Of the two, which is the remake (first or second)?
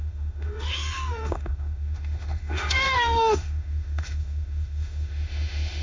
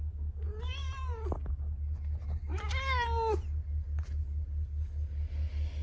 first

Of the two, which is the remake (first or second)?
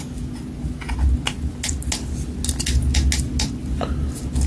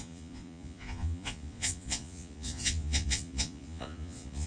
second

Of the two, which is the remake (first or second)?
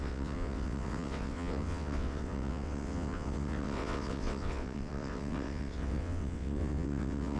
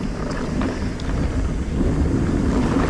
first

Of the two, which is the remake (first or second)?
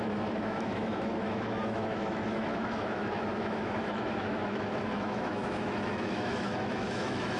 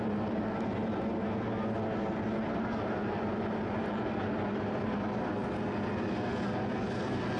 first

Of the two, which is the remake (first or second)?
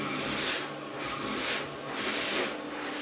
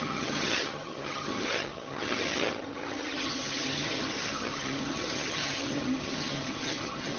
second